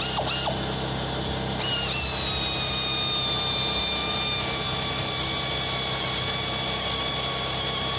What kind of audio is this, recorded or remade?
recorded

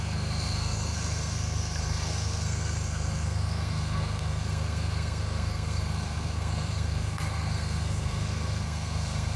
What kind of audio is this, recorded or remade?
remade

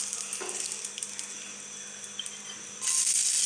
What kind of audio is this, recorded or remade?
recorded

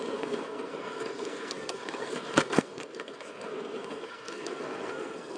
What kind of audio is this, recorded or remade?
remade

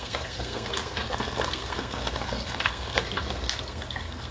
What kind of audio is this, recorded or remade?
remade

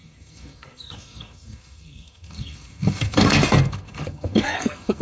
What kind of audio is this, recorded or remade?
remade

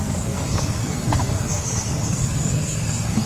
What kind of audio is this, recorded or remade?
remade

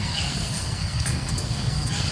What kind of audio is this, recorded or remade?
remade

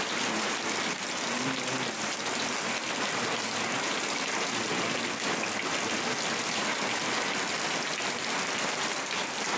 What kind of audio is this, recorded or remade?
recorded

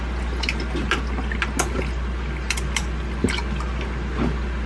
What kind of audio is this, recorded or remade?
recorded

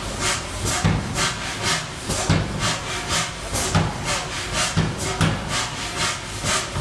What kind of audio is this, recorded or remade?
recorded